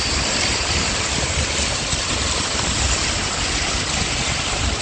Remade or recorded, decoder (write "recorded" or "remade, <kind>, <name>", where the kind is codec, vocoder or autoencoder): remade, vocoder, BigVGAN v2